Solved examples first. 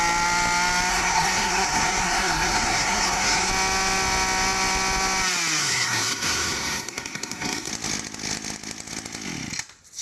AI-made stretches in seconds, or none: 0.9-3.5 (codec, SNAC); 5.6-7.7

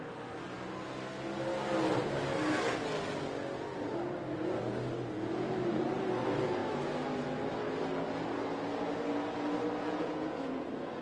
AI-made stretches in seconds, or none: 9.9-11.0 (vocoder, Vocos)

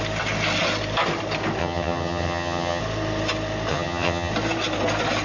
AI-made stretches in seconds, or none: 1.6-2.8 (vocoder, HiFi-GAN); 3.7-4.3

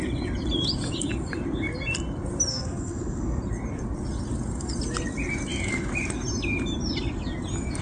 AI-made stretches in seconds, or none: 2.5-3.4 (codec, SNAC)

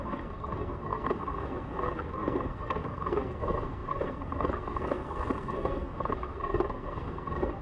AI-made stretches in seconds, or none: 0.0-7.6 (codec, SNAC)

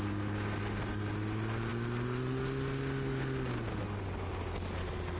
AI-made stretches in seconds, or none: none

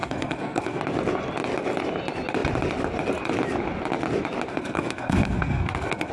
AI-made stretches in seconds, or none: 0.0-0.8 (codec, SNAC); 4.5-6.1

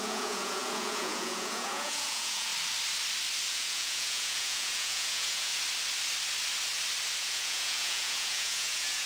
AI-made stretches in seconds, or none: 0.0-2.5 (vocoder, Vocos); 3.5-5.5; 7.2-9.1